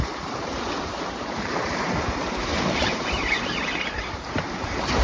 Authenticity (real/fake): fake